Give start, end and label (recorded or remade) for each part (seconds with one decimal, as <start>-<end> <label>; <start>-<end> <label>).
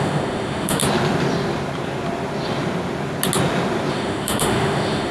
0.0-0.8 remade; 0.8-3.9 recorded; 3.9-5.1 remade